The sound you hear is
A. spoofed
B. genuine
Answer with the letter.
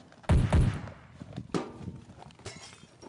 B